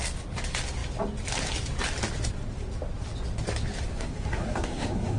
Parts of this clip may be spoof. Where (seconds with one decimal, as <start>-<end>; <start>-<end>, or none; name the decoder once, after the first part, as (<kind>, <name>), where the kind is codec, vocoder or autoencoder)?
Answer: 3.9-5.2 (codec, SNAC)